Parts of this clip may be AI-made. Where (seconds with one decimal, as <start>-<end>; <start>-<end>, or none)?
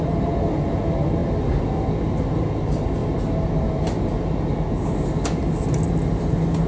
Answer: none